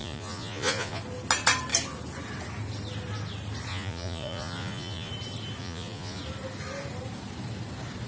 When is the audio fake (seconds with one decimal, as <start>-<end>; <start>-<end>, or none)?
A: 0.0-1.0; 3.7-5.1; 5.6-6.2